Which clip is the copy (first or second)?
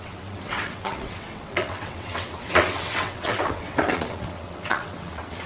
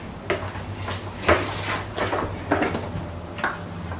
first